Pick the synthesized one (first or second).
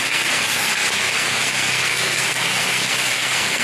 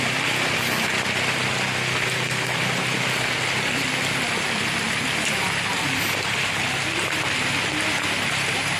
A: first